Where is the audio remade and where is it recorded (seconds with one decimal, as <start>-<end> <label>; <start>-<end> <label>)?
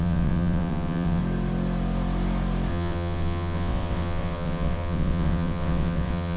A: 0.0-1.2 remade; 1.2-2.7 recorded; 2.7-6.4 remade